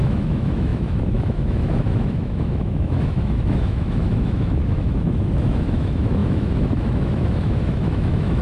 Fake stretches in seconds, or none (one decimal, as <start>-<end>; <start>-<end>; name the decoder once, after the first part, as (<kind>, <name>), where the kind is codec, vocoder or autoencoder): 0.0-8.4 (autoencoder, DAC-VAE)